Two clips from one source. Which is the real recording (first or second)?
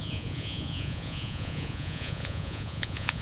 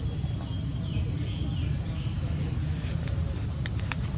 second